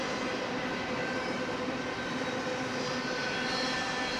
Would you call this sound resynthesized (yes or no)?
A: no